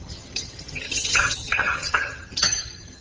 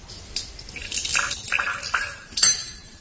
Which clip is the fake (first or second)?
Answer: first